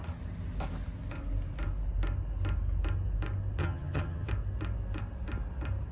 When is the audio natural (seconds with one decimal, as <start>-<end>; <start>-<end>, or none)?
0.0-3.6; 4.3-5.9